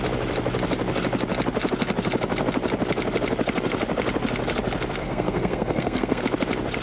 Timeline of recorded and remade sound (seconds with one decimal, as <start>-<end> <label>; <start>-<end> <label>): 0.0-5.0 recorded; 5.0-6.2 remade; 6.2-6.8 recorded